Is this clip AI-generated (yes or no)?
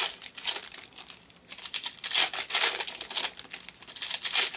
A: no